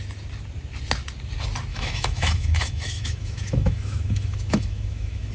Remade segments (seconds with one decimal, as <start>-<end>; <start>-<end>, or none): 1.7-5.3